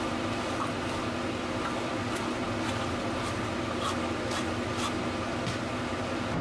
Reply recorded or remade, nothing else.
recorded